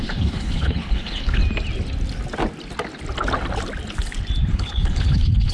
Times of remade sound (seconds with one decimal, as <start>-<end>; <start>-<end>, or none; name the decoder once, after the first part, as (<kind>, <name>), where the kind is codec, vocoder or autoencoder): 0.0-1.4 (codec, HILCodec); 4.5-5.5